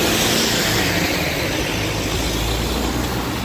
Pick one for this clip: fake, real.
real